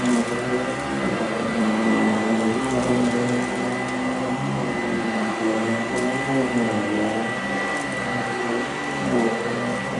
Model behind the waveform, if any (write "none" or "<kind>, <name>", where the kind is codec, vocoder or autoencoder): none